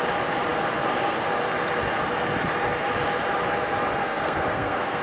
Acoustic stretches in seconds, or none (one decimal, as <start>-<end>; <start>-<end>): 0.0-4.0